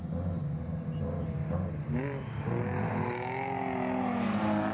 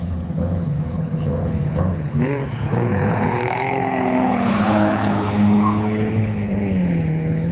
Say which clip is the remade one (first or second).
second